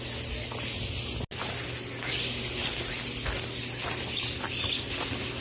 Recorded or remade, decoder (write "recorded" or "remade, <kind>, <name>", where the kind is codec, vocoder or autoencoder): recorded